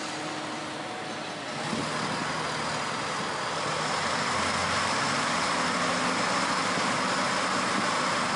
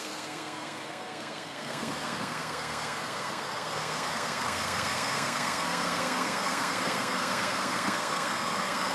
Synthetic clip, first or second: second